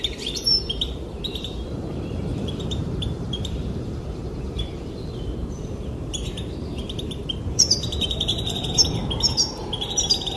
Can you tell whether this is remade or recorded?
remade